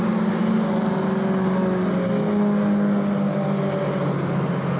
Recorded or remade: recorded